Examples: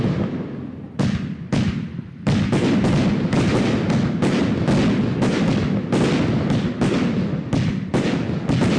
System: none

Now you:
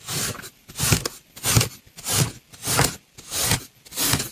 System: none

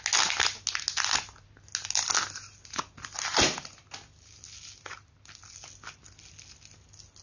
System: none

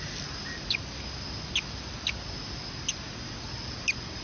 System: none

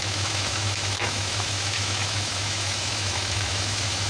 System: autoencoder, DAC-VAE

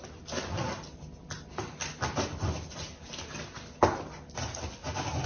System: none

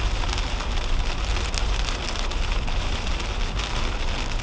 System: none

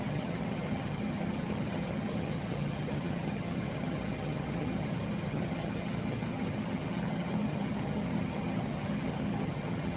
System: vocoder, HiFi-GAN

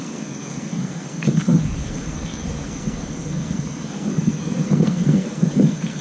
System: codec, SNAC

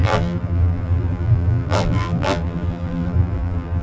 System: vocoder, BigVGAN v2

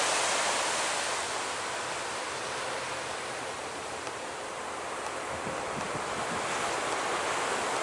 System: none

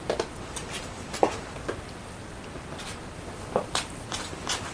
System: vocoder, BigVGAN v2